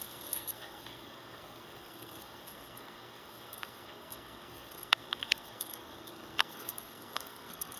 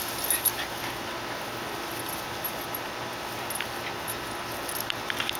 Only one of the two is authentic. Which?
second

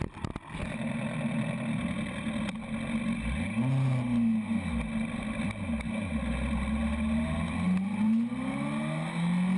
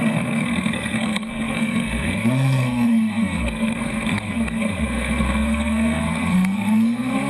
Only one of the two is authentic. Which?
first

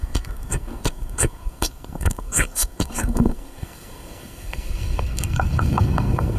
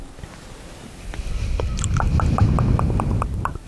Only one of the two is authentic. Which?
second